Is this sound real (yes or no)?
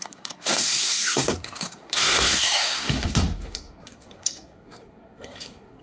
no